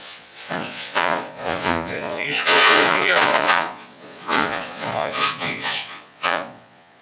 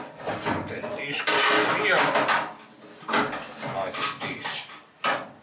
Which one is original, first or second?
second